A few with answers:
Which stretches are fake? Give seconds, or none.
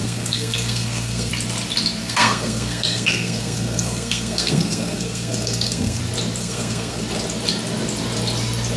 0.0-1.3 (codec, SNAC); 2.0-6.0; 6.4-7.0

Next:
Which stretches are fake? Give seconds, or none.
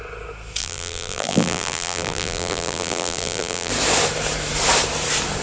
0.6-3.7 (vocoder, BigVGAN v2)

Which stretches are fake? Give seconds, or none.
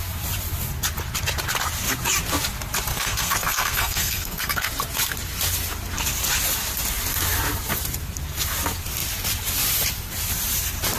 2.9-4.7 (codec, SNAC)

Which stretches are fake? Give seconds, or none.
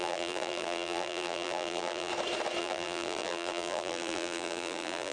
0.0-2.1 (vocoder, BigVGAN v2); 2.6-5.1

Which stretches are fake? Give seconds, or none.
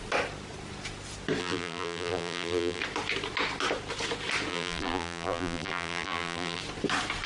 1.4-2.8 (vocoder, BigVGAN v2); 4.5-6.6